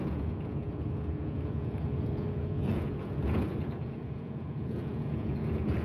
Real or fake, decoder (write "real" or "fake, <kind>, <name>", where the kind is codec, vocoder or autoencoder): fake, vocoder, Vocos